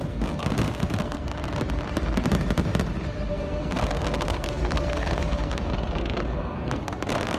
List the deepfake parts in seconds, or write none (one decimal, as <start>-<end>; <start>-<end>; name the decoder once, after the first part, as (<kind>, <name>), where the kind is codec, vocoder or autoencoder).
0.0-1.3 (codec, SNAC); 3.3-7.4